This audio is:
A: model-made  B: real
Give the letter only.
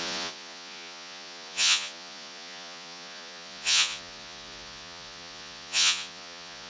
A